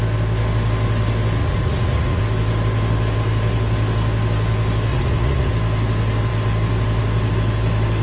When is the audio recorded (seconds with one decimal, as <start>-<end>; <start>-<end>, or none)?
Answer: 0.0-1.4; 2.2-4.9; 5.5-8.0